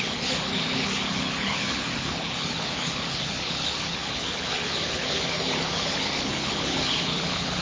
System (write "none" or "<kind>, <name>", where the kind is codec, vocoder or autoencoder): codec, HILCodec